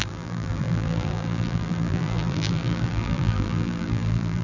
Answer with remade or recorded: remade